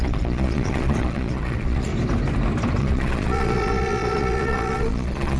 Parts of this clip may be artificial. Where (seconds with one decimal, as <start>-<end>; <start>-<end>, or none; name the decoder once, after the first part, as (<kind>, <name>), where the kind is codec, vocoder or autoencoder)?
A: 0.0-1.9 (vocoder, Vocos); 2.8-5.4